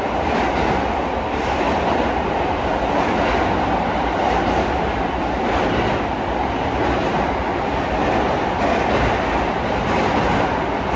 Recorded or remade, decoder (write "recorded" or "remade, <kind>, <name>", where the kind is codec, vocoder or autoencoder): recorded